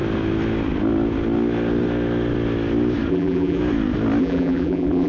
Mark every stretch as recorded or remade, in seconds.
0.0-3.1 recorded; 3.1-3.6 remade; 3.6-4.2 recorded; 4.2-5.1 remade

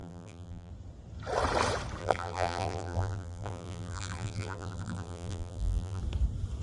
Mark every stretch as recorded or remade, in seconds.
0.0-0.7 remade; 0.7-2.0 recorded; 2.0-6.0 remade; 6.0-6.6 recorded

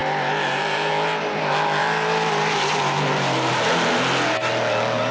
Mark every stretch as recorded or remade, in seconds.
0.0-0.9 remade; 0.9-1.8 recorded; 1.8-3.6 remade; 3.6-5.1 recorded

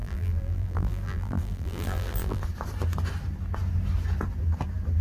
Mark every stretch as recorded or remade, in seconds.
0.0-2.4 remade; 2.4-5.0 recorded